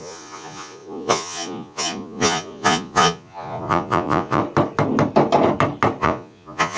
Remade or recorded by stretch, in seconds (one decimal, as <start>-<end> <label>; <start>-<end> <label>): 0.0-4.4 remade; 4.4-6.0 recorded; 6.0-6.8 remade